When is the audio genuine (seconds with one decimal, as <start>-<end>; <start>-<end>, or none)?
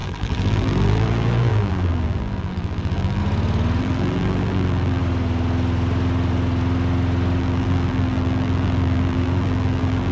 3.2-3.8; 5.0-7.4